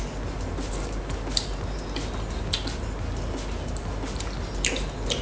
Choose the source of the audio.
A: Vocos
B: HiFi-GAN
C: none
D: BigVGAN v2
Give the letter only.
C